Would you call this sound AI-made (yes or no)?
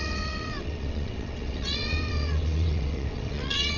yes